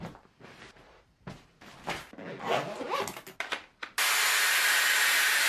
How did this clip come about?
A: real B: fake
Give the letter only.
A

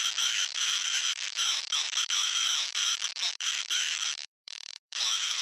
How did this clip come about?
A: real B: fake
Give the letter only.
B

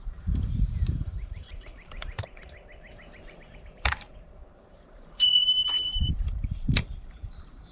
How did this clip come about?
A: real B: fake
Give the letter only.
B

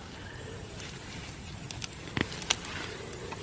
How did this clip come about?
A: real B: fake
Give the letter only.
A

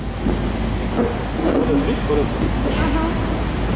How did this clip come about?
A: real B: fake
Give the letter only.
A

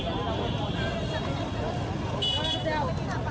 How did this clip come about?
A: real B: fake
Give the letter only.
A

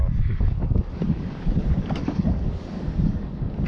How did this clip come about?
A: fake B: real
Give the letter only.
A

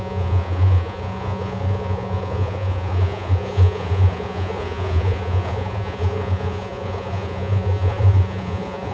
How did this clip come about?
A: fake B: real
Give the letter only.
A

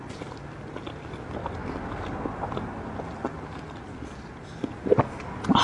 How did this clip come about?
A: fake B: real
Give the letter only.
B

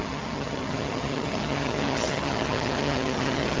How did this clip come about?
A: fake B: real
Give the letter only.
A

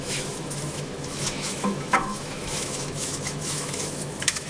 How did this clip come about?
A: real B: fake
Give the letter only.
B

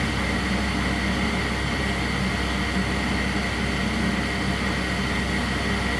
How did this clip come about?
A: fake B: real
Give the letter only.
B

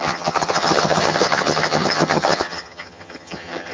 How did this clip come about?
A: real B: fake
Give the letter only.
B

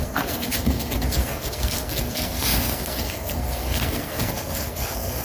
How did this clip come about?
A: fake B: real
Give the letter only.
A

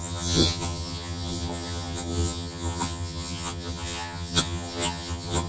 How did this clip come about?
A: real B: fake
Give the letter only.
B